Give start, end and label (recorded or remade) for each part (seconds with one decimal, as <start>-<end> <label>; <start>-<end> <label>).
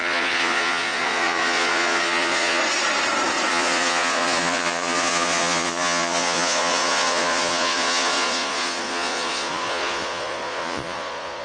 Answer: 0.0-2.6 remade; 2.6-3.5 recorded; 3.5-11.4 remade